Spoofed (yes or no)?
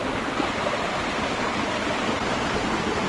yes